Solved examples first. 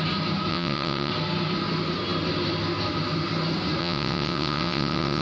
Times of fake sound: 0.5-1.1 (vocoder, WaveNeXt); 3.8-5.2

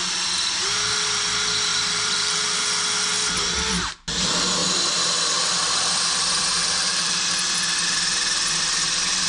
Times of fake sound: 1.7-2.4 (vocoder, BigVGAN v2); 4.6-8.6

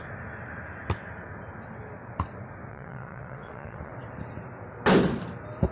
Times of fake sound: 2.7-3.9 (vocoder, WaveNeXt)

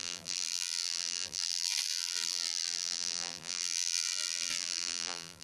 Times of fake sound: 0.0-5.4 (vocoder, BigVGAN v2)

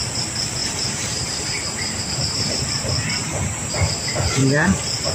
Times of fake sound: 0.6-3.7 (vocoder, BigVGAN v2); 4.4-5.1

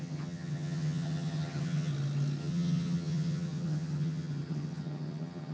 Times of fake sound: 0.0-1.9 (vocoder, HiFi-GAN); 2.4-5.5

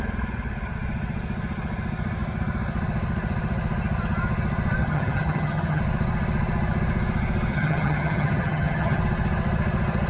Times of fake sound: 4.8-5.8 (vocoder, HiFi-GAN); 7.5-9.0